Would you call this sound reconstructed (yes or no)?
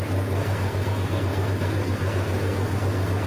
yes